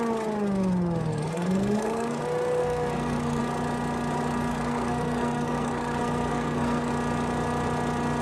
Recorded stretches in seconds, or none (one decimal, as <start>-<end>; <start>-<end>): 0.0-1.1; 2.2-2.6; 3.4-4.5; 6.9-8.2